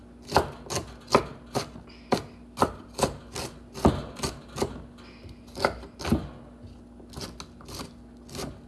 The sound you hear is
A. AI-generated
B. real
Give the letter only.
B